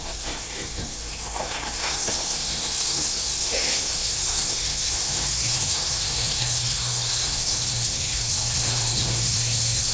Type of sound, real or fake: fake